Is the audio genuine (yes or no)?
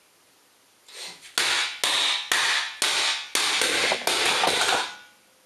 yes